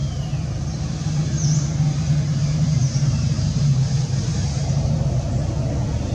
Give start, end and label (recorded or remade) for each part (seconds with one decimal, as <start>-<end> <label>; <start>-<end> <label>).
0.0-2.4 recorded; 2.4-4.9 remade; 4.9-6.1 recorded